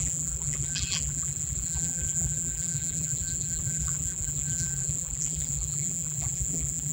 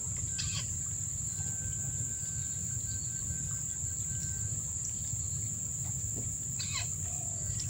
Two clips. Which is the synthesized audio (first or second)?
first